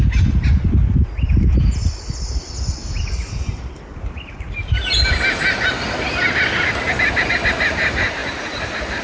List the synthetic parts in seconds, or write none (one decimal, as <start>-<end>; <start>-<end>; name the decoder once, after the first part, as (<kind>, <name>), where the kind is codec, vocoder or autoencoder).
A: none

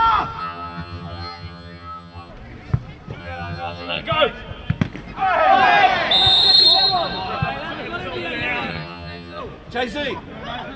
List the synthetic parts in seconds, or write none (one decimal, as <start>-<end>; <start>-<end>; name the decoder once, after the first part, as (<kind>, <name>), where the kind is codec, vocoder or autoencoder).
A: 0.4-2.3 (vocoder, HiFi-GAN); 3.2-4.0; 8.7-9.4